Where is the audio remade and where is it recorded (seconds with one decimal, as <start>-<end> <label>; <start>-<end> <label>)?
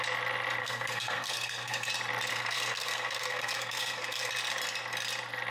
0.0-0.6 recorded; 0.6-1.9 remade; 1.9-2.3 recorded; 2.3-4.3 remade; 4.3-5.5 recorded